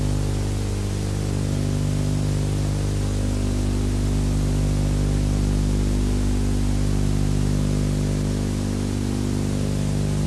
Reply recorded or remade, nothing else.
recorded